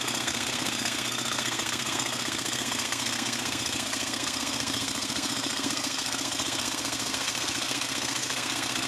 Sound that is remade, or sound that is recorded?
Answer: remade